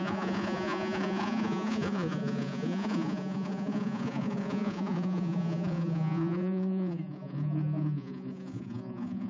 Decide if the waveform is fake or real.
fake